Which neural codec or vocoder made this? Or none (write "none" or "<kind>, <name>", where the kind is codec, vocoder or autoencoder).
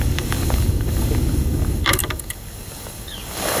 codec, DAC